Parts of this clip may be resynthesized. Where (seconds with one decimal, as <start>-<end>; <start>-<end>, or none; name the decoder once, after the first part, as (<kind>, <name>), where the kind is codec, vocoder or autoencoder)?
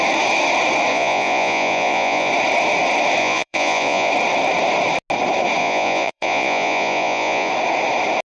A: 0.9-2.3 (vocoder, Vocos); 3.2-4.1; 5.6-7.5